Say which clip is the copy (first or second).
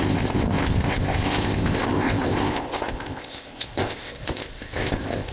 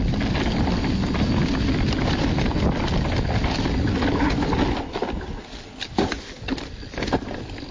first